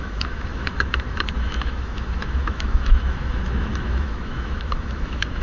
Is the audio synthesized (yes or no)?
yes